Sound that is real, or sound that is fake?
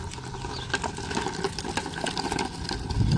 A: real